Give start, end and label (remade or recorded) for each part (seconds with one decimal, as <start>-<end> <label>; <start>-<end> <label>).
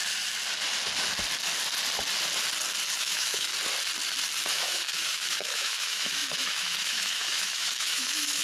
0.0-3.0 recorded; 3.0-3.5 remade; 3.5-4.5 recorded; 4.5-8.4 remade